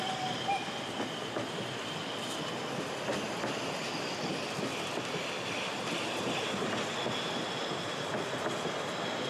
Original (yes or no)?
yes